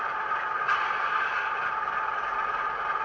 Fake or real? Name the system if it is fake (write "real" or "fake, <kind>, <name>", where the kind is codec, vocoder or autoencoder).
real